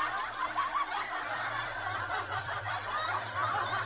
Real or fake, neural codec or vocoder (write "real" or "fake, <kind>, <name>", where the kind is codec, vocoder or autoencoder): fake, vocoder, BigVGAN v2